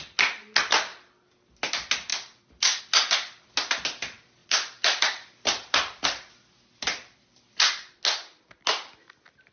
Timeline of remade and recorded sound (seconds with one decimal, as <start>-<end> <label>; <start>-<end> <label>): 0.0-2.1 recorded; 2.1-2.8 remade; 2.8-4.4 recorded; 4.4-8.0 remade; 8.0-9.5 recorded